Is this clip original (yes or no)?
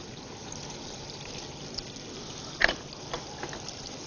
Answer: yes